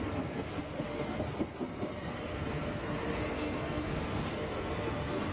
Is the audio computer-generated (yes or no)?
yes